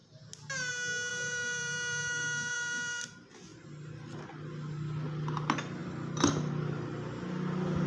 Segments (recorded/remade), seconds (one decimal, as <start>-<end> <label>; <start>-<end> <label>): 0.0-1.1 recorded; 1.1-3.0 remade; 3.0-3.5 recorded; 3.5-4.2 remade; 4.2-5.8 recorded; 5.8-6.5 remade; 6.5-7.9 recorded